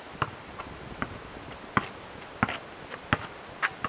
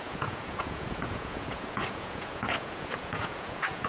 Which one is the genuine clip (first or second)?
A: first